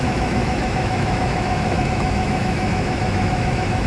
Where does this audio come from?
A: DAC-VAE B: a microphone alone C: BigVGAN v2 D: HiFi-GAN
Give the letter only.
A